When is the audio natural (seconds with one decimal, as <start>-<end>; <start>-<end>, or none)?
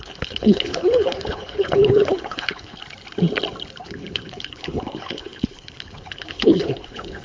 2.8-3.8